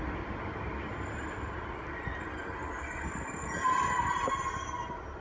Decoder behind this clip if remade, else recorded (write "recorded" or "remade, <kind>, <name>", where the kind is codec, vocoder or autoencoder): recorded